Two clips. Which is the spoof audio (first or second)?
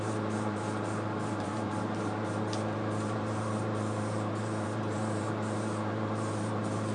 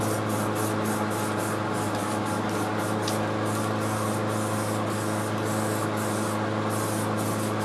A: first